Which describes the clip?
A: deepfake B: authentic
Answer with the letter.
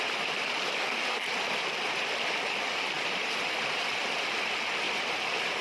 A